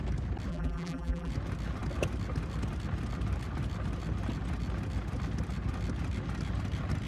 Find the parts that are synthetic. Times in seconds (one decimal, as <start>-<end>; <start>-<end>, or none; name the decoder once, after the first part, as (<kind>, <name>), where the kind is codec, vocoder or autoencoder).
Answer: 0.5-1.3 (vocoder, BigVGAN v2)